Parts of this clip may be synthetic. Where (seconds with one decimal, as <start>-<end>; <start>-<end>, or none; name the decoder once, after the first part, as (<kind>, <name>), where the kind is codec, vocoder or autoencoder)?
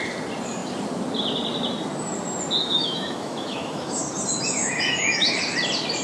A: 2.6-4.0 (autoencoder, DAC-VAE); 4.6-5.4